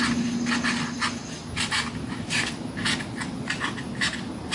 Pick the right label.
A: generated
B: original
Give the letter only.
B